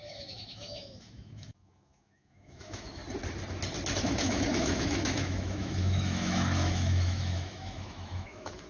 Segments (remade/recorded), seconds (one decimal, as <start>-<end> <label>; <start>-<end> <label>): 0.0-3.0 remade; 3.0-4.0 recorded; 4.0-8.7 remade